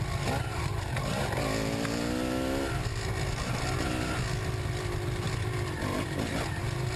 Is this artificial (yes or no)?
no